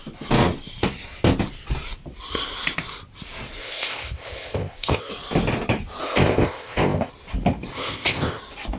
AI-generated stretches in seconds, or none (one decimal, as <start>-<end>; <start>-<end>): 3.6-5.1; 6.0-7.1; 7.7-8.4